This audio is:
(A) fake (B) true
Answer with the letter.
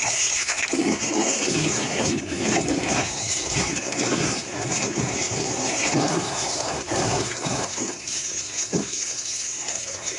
A